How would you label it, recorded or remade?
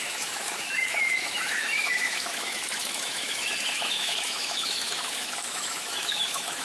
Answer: remade